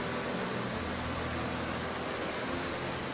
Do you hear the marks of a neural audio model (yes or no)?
no